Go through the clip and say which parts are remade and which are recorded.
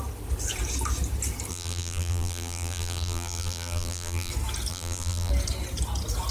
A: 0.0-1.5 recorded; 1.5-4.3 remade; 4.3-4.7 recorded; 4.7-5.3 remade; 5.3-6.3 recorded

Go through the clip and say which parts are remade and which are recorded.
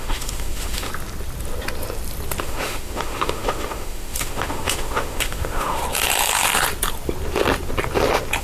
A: 0.0-0.9 remade; 0.9-2.4 recorded; 2.4-5.8 remade; 5.8-8.4 recorded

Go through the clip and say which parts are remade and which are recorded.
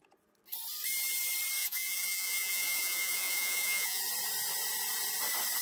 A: 0.0-1.6 recorded; 1.6-4.0 remade; 4.0-5.6 recorded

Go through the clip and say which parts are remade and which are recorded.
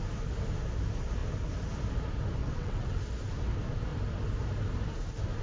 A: 0.0-2.4 recorded; 2.4-3.0 remade; 3.0-5.4 recorded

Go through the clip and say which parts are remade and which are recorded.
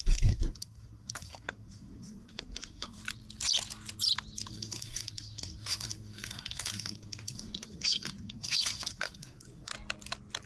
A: 0.0-3.0 remade; 3.0-4.5 recorded; 4.5-9.7 remade; 9.7-10.5 recorded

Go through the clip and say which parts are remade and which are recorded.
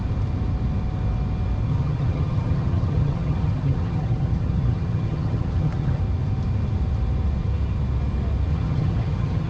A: 0.0-1.7 recorded; 1.7-6.0 remade; 6.0-8.5 recorded; 8.5-9.5 remade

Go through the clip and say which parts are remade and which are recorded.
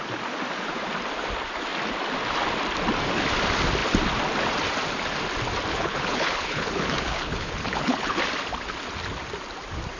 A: 0.0-5.7 recorded; 5.7-8.2 remade; 8.2-10.0 recorded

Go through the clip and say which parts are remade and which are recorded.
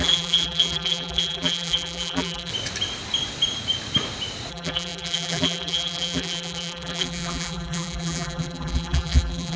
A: 0.0-2.5 remade; 2.5-4.5 recorded; 4.5-9.6 remade